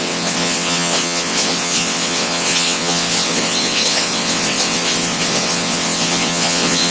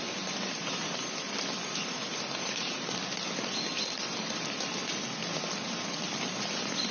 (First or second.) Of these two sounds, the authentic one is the second